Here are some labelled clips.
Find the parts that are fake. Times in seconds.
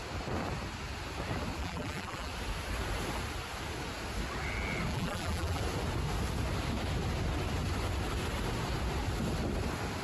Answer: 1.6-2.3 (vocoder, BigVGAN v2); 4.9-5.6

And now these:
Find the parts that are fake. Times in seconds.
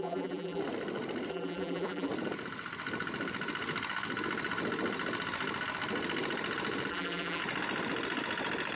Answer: 0.0-0.6 (vocoder, BigVGAN v2); 1.3-2.1; 6.9-7.4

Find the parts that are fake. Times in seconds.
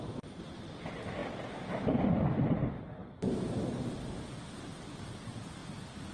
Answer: 3.0-3.6 (vocoder, BigVGAN v2)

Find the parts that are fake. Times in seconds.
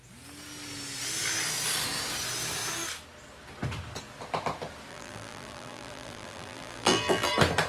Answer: 4.9-7.3 (vocoder, BigVGAN v2)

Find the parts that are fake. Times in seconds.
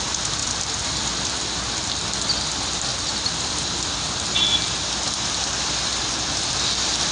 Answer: 0.4-1.0 (vocoder, BigVGAN v2)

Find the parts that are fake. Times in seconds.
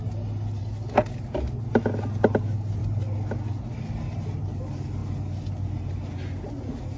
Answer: none